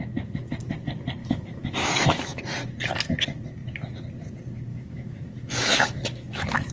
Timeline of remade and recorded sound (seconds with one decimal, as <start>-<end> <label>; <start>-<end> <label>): 0.0-1.2 recorded; 1.2-2.4 remade; 2.4-4.7 recorded; 4.7-6.7 remade